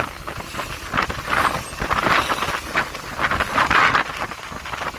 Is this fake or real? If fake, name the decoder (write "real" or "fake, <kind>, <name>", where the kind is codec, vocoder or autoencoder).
real